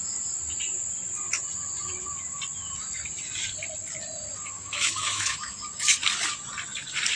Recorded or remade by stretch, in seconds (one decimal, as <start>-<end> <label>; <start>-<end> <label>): 0.0-4.6 recorded; 4.6-5.6 remade; 5.6-7.2 recorded